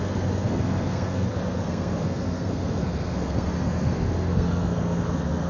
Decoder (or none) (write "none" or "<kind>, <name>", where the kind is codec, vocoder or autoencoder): codec, SNAC